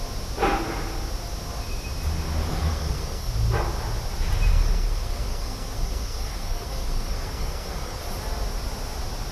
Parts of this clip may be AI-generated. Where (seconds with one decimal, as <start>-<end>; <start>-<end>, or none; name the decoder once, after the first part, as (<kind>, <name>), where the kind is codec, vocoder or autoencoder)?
2.5-3.3 (codec, SNAC); 4.5-8.0

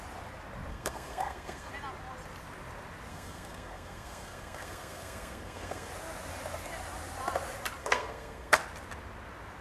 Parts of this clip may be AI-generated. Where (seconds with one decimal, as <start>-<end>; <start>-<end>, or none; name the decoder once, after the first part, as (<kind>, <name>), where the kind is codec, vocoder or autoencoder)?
0.7-1.7 (codec, SNAC); 3.1-5.9; 7.8-8.6

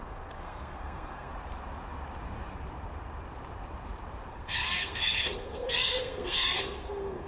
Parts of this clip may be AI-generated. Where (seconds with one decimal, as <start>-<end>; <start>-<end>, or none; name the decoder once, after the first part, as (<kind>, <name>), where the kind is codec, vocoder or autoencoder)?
0.0-1.3 (codec, SNAC); 4.3-7.3

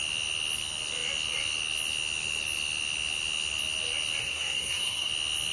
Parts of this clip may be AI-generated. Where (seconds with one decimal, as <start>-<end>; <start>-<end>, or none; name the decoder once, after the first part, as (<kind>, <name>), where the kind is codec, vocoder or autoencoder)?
4.2-5.1 (codec, SNAC)

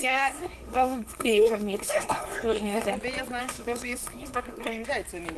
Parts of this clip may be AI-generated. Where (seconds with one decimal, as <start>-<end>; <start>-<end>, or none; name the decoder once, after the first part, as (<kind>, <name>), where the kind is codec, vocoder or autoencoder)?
0.0-2.9 (codec, SNAC); 3.4-4.9

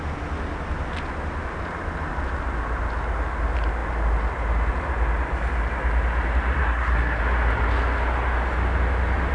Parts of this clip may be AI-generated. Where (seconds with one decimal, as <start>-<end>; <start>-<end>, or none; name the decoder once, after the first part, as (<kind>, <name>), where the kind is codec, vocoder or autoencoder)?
6.6-7.2 (codec, SNAC)